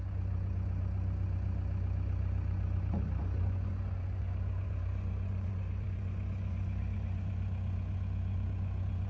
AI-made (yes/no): yes